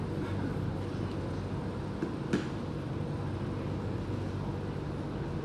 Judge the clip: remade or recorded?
recorded